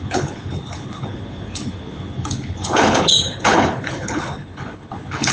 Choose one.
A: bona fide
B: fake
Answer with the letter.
B